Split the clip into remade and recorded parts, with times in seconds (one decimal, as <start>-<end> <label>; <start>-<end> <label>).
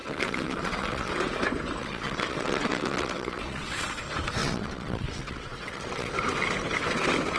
0.0-1.1 remade; 1.1-1.8 recorded; 1.8-4.0 remade; 4.0-4.4 recorded; 4.4-6.1 remade; 6.1-7.4 recorded